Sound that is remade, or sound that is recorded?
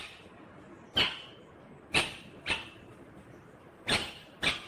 remade